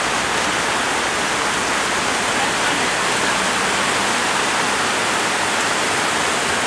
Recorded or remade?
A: recorded